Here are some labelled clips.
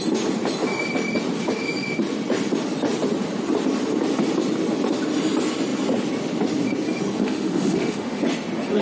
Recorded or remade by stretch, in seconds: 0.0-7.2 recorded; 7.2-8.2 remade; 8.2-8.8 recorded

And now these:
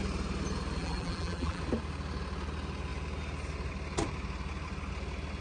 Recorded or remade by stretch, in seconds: 0.0-0.8 recorded; 0.8-1.6 remade; 1.6-5.4 recorded

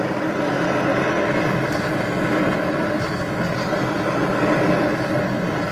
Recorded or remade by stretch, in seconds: 0.0-5.7 recorded

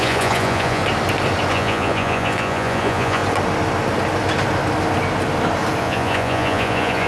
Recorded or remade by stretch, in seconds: 0.0-0.8 remade; 0.8-1.5 recorded; 1.5-3.2 remade; 3.2-5.8 recorded; 5.8-7.1 remade

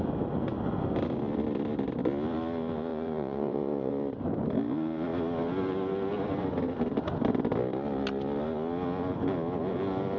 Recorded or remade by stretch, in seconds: 0.0-2.9 recorded; 2.9-3.9 remade; 3.9-10.2 recorded